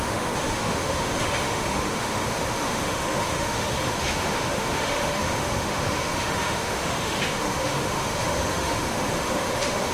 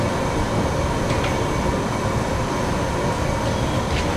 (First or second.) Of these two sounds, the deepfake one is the first